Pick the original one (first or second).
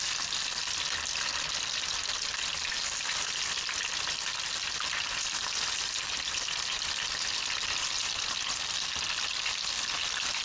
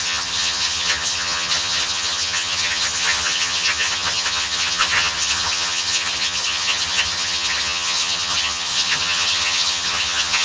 first